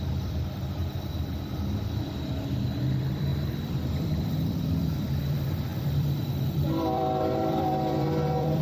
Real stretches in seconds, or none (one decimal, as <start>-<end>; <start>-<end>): 0.8-2.8